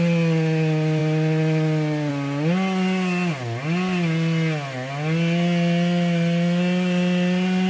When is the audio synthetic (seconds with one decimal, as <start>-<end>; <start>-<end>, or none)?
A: none